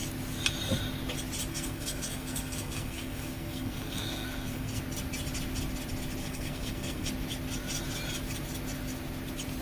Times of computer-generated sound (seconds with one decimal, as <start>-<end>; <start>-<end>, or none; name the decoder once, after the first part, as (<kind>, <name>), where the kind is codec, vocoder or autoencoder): 1.5-4.8 (codec, SNAC); 6.2-7.1